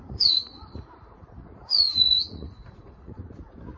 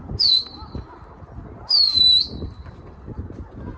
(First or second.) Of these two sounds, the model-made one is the first